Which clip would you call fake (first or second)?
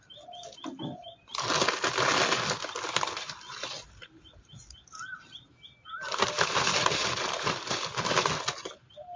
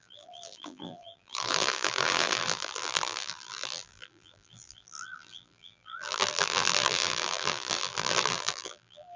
second